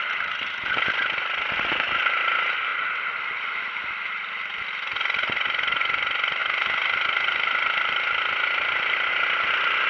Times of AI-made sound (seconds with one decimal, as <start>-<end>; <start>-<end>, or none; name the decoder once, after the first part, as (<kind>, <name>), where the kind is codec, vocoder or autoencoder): none